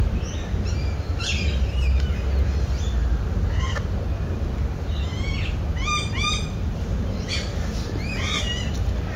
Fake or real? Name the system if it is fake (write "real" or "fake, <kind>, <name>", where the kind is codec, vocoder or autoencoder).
real